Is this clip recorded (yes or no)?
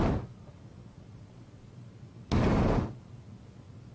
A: yes